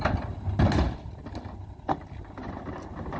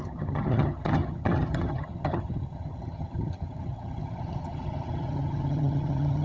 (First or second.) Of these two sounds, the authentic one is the first